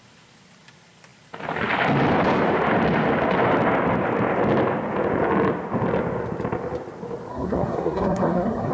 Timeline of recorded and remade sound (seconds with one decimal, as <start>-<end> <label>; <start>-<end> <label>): 0.0-7.3 recorded; 7.3-8.7 remade